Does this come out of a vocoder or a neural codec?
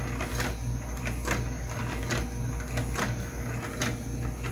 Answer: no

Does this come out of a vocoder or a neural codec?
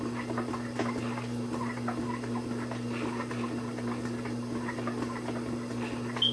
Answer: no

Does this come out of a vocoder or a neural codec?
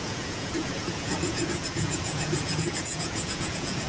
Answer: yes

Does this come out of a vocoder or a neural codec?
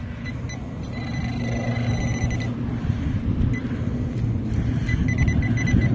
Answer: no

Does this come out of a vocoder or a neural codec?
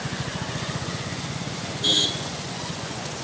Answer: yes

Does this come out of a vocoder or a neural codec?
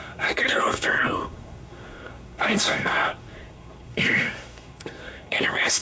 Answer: yes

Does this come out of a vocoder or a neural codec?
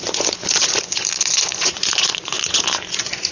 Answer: yes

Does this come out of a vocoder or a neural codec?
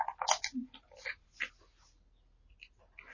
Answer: no